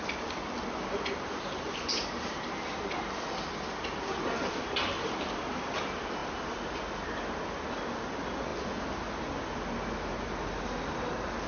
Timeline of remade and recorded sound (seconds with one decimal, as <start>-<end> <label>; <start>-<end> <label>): 0.0-11.5 recorded